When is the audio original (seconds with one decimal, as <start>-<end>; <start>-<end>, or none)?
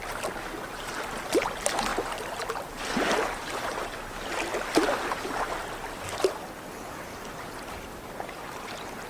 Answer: 0.0-9.1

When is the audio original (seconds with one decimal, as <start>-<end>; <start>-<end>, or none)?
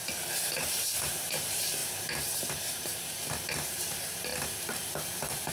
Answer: 0.0-0.6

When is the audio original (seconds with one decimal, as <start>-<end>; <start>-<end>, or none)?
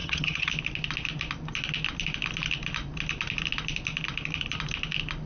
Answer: 0.5-5.3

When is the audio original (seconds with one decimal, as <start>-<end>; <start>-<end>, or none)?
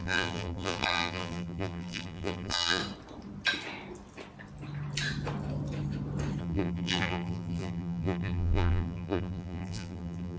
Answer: 2.8-6.4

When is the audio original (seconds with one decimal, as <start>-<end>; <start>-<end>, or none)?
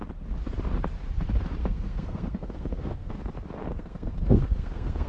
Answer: 0.0-1.6; 3.2-3.6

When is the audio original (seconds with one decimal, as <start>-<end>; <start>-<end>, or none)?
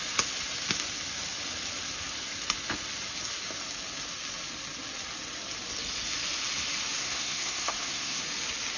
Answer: 0.0-7.0; 8.2-8.8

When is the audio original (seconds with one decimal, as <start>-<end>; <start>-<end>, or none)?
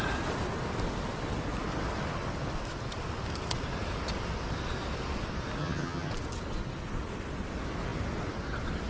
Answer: 0.0-5.6; 6.1-8.9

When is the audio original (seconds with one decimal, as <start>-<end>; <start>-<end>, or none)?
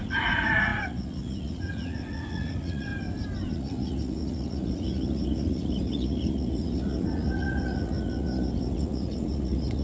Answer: 2.9-3.5